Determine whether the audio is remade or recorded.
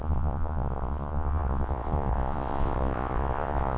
remade